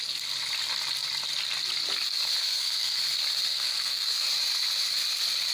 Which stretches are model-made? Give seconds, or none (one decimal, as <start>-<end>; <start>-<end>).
2.4-3.0; 3.5-4.1